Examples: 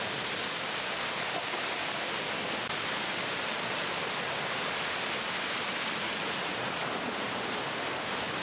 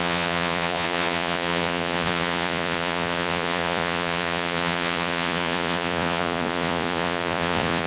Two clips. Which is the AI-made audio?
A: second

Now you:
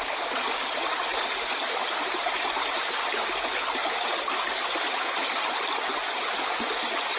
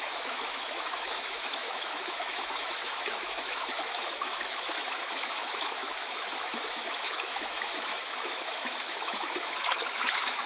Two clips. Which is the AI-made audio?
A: second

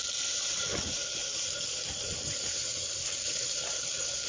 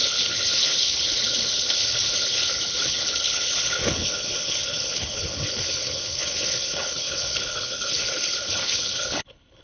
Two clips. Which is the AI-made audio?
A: second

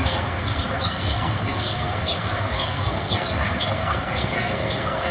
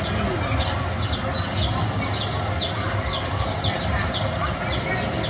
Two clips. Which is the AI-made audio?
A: first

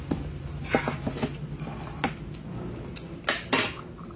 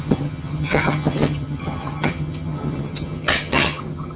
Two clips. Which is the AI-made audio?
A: second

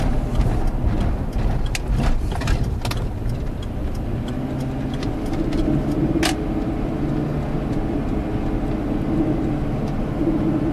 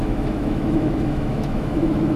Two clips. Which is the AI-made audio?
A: second